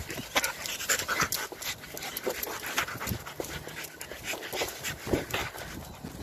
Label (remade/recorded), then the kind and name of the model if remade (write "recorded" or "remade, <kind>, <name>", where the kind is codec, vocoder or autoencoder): recorded